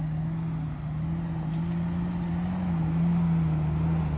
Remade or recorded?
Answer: recorded